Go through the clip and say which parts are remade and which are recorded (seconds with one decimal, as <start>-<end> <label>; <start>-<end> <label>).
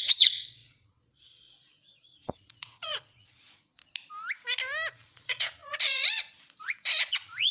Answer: 0.0-3.8 remade; 3.8-4.9 recorded; 4.9-7.5 remade